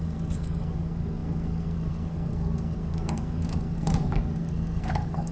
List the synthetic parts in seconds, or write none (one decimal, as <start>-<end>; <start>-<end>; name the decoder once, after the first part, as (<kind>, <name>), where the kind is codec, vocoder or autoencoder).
0.0-5.3 (codec, SNAC)